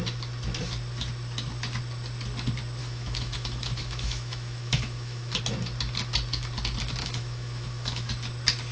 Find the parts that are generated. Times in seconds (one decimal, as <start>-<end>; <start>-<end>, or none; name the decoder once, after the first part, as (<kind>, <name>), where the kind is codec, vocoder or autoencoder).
2.8-5.4 (autoencoder, DAC-VAE); 7.0-8.1